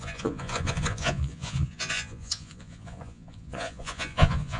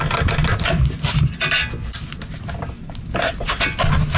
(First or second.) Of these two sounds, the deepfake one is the first